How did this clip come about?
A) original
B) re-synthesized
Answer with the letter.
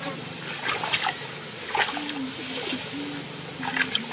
A